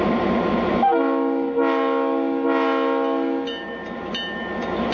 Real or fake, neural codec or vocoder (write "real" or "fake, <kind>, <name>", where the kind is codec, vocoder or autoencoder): real